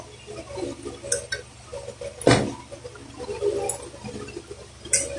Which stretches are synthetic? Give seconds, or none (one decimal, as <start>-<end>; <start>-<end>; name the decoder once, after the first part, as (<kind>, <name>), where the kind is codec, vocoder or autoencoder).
none